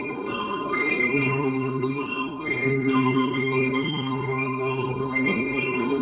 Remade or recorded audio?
remade